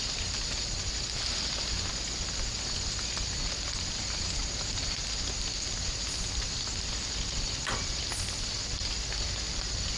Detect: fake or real real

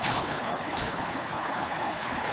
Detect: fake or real fake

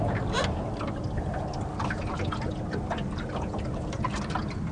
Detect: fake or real real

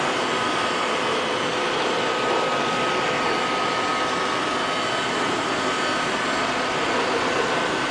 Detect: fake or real real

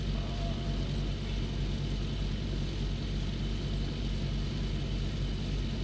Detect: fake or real real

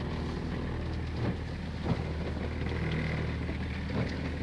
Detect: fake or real real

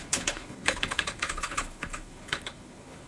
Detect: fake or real fake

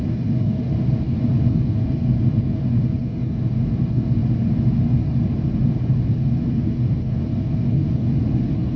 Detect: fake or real real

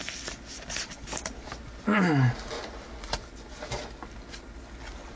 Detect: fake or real real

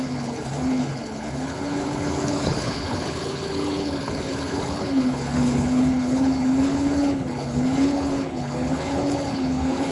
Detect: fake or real fake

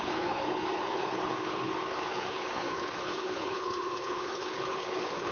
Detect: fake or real fake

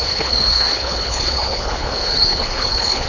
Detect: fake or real fake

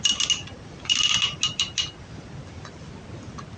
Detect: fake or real real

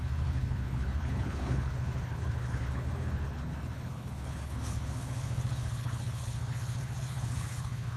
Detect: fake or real fake